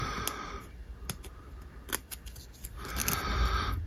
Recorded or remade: recorded